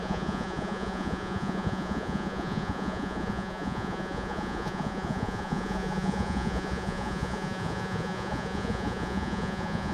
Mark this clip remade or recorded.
remade